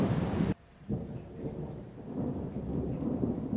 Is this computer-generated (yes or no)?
yes